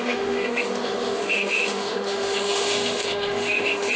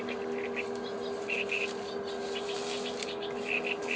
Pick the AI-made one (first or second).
first